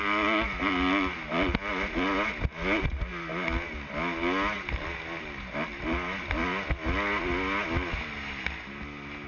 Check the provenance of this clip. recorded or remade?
recorded